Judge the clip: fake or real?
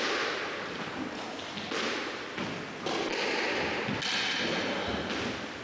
real